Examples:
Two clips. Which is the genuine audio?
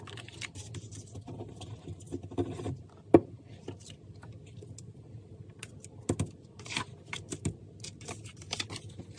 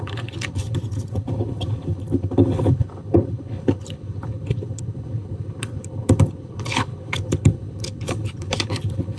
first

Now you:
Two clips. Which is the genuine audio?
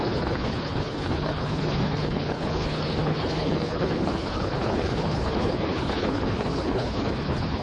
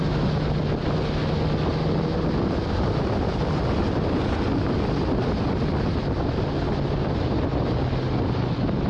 second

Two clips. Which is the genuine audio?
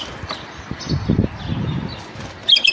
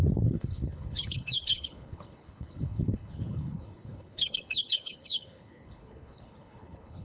first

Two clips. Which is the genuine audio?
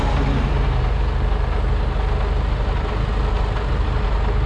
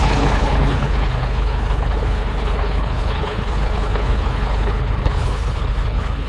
first